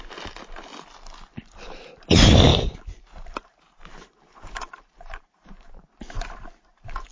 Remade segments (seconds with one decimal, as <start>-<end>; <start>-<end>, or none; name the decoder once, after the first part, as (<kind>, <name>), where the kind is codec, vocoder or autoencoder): 2.5-6.0 (vocoder, BigVGAN v2)